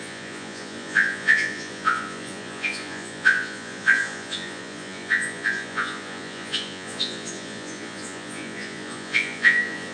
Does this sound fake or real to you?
fake